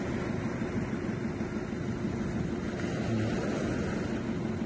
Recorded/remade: recorded